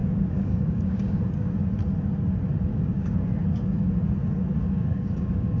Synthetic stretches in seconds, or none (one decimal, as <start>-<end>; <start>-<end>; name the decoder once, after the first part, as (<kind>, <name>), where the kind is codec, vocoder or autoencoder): 0.0-1.7 (codec, DAC); 2.7-3.3; 4.6-5.6